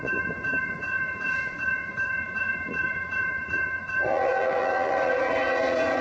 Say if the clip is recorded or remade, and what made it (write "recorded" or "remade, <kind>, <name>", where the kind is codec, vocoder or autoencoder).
remade, vocoder, Vocos